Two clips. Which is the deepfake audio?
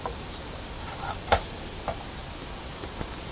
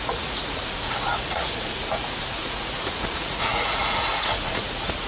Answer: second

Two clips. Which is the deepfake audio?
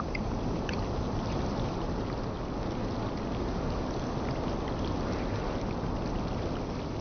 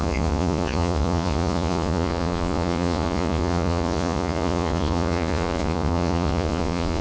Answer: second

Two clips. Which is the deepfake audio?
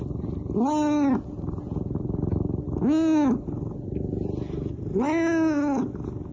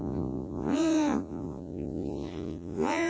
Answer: second